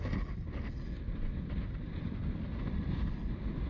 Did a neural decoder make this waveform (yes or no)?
no